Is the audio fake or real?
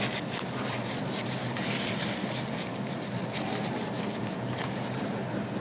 real